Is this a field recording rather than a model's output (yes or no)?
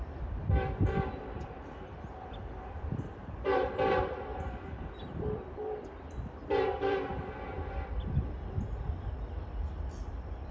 no